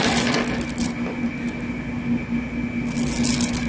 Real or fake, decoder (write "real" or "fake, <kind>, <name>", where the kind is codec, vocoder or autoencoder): real